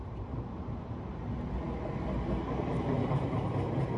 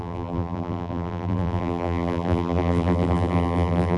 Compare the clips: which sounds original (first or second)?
first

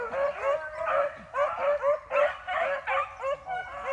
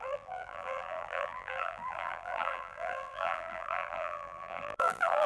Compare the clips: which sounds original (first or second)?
first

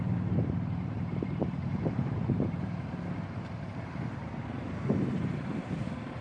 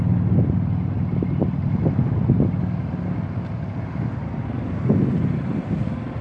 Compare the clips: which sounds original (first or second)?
second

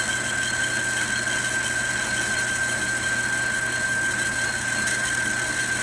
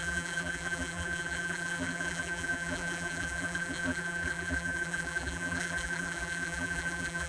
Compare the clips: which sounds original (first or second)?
first